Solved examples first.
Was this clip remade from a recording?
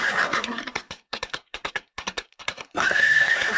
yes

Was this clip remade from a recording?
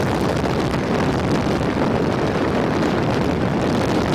no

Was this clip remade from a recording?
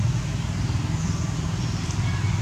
no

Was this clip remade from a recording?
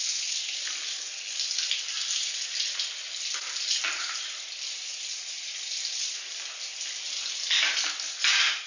no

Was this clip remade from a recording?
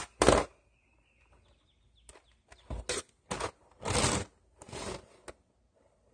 no